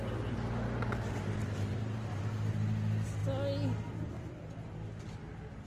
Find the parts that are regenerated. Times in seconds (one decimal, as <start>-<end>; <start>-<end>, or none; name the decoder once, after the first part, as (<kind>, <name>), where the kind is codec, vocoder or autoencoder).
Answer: 1.4-2.2 (vocoder, BigVGAN v2)